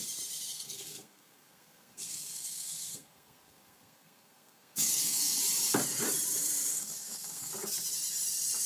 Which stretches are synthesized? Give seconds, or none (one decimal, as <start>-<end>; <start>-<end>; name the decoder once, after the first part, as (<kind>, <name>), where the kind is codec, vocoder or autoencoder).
0.5-5.4 (codec, SNAC); 6.7-7.5